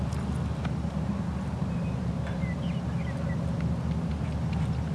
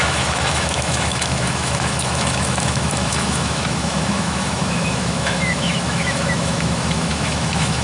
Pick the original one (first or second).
first